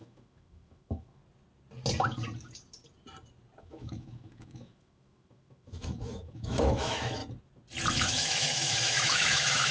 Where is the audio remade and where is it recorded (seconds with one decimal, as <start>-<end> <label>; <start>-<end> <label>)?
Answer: 0.0-1.2 remade; 1.2-3.6 recorded; 3.6-7.2 remade; 7.2-7.9 recorded; 7.9-9.7 remade